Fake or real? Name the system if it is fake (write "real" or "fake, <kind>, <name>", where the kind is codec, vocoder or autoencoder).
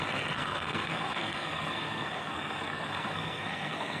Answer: fake, codec, SNAC